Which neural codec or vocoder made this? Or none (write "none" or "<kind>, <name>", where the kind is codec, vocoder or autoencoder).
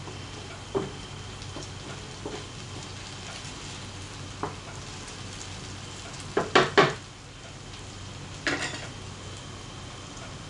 none